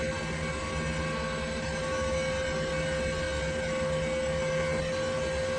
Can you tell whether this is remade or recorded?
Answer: recorded